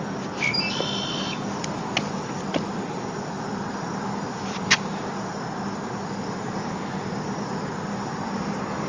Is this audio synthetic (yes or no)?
no